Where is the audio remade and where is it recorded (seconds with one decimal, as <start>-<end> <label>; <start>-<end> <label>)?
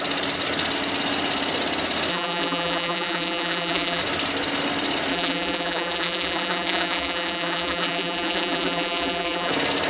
0.0-2.1 recorded; 2.1-4.0 remade; 4.0-5.1 recorded; 5.1-9.5 remade; 9.5-9.9 recorded